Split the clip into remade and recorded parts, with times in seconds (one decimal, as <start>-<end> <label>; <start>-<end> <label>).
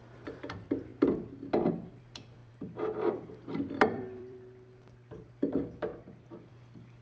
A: 0.0-0.9 remade; 0.9-2.0 recorded; 2.0-7.0 remade